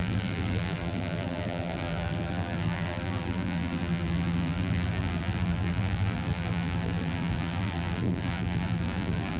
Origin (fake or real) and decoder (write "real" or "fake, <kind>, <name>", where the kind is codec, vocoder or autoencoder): fake, vocoder, BigVGAN v2